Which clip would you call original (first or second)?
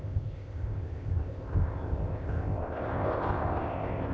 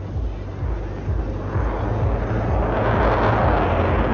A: second